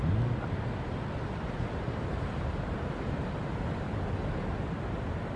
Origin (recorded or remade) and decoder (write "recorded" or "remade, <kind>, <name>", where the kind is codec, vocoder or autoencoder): recorded